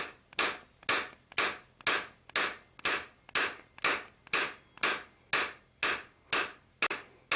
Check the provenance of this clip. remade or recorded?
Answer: recorded